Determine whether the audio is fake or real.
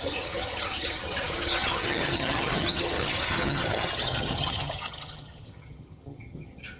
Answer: fake